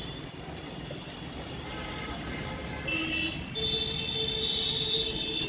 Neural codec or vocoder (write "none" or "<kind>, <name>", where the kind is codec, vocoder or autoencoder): none